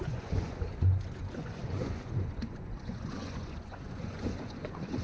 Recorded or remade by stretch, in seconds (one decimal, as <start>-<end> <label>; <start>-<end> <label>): 0.0-5.0 remade